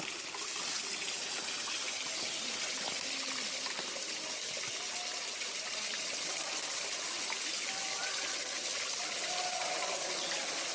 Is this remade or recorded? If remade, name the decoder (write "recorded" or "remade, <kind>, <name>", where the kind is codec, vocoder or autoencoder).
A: recorded